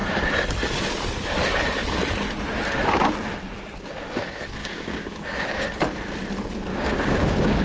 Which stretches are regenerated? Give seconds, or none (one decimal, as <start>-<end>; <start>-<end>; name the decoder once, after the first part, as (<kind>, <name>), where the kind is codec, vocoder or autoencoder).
4.6-5.7 (codec, DAC); 6.7-7.6